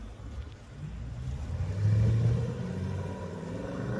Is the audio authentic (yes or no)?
yes